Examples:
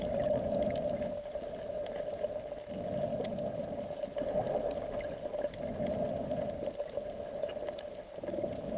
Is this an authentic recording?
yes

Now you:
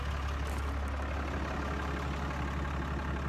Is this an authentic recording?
yes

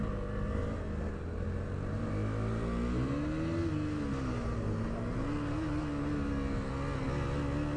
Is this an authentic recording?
yes